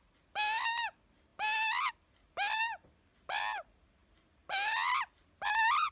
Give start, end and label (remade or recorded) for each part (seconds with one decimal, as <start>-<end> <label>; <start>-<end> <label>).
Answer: 0.0-5.9 recorded